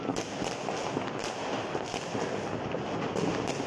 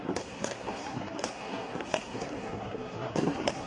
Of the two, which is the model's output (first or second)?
second